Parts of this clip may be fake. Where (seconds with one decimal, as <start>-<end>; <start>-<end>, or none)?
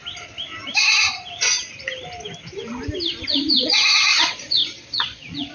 3.3-5.5